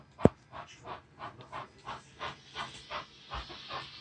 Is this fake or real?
real